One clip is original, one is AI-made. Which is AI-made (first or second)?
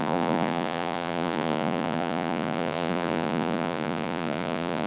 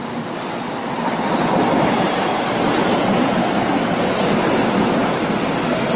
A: first